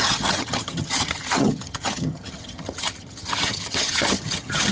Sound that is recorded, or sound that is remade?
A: remade